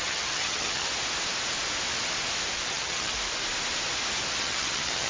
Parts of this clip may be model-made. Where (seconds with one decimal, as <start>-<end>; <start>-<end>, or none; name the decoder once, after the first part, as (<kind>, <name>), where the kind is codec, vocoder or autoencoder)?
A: 0.0-0.9 (vocoder, HiFi-GAN); 2.7-3.1; 4.4-5.1